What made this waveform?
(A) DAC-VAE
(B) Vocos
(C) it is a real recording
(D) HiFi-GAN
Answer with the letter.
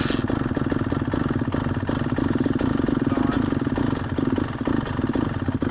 C